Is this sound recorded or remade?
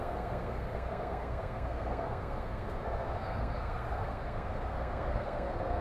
remade